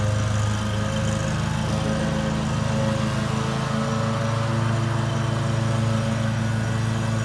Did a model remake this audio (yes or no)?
no